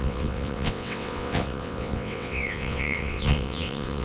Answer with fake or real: fake